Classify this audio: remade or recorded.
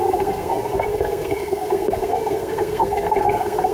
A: remade